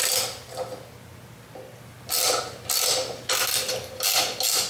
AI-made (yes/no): no